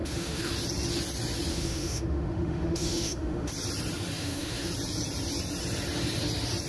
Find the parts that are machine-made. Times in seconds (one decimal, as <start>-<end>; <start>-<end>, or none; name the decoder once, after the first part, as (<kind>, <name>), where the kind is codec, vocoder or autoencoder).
0.0-0.5 (autoencoder, DAC-VAE); 1.5-3.5; 4.2-4.7